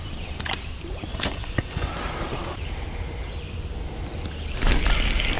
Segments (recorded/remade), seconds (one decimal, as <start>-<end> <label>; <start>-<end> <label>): 0.0-1.1 recorded; 1.1-1.9 remade; 1.9-5.4 recorded